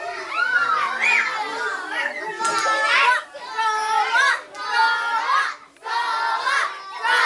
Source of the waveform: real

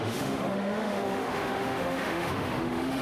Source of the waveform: fake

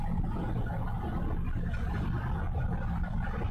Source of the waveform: real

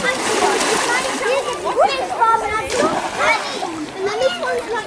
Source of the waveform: real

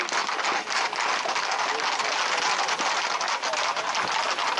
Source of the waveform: real